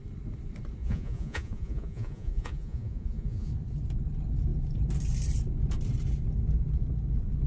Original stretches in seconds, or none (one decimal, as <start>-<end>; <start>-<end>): 0.0-0.8; 3.5-7.5